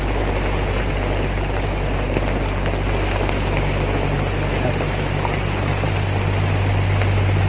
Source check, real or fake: real